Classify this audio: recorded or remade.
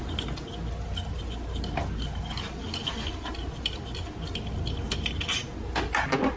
recorded